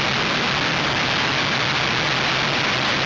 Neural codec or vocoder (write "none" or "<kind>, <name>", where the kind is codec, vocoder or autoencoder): none